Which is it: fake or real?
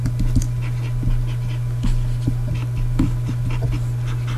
real